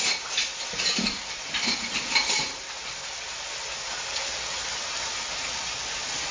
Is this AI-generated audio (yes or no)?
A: no